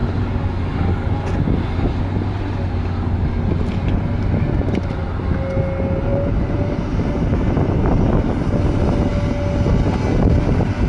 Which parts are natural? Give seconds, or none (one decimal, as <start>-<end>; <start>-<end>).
0.0-10.9